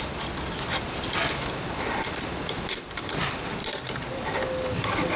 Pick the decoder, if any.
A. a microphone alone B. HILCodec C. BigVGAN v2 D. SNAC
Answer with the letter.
C